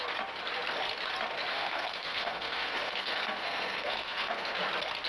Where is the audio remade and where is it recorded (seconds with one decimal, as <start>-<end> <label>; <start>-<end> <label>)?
0.0-1.5 recorded; 1.5-4.6 remade; 4.6-5.1 recorded